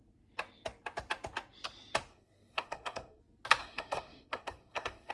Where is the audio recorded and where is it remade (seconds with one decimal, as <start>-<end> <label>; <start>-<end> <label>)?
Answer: 0.0-2.1 recorded; 2.1-3.2 remade; 3.2-3.6 recorded; 3.6-5.1 remade